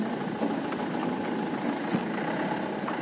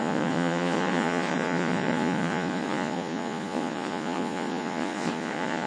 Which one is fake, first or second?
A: second